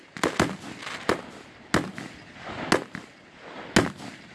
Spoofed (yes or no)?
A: no